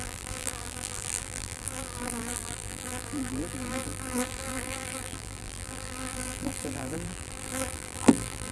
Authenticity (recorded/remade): remade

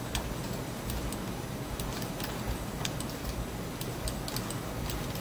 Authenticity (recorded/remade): recorded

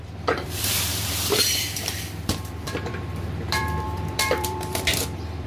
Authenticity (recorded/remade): remade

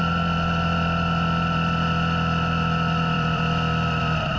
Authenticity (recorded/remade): remade